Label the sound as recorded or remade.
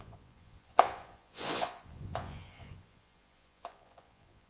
remade